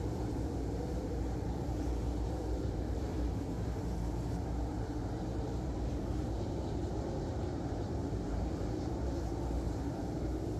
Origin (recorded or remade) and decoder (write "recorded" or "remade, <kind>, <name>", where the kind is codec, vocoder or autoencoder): remade, vocoder, BigVGAN v2